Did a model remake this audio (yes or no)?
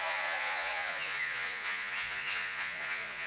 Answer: yes